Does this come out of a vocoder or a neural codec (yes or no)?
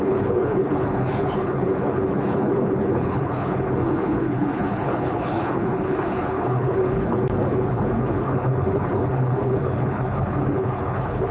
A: yes